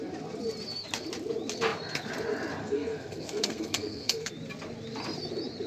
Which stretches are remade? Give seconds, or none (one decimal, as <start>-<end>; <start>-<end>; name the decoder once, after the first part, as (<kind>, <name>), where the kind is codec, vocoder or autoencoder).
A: 2.6-4.3 (codec, SNAC)